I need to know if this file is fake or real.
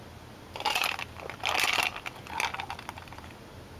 real